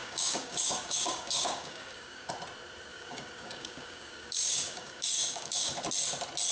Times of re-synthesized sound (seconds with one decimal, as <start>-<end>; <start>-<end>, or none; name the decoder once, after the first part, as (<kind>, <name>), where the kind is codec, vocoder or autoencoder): 0.0-2.3 (codec, DAC); 2.9-5.7